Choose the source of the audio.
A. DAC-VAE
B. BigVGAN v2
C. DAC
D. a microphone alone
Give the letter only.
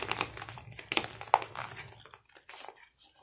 D